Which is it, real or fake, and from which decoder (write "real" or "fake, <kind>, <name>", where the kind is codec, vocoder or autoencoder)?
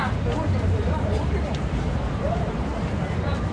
real